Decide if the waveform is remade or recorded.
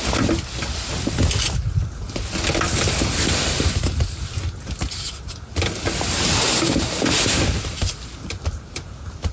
recorded